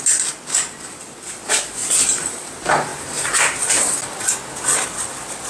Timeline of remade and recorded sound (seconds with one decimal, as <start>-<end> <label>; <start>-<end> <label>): 0.0-5.5 recorded